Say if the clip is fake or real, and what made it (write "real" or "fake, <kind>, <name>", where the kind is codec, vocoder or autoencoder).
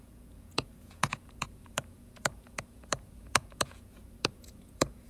fake, vocoder, Vocos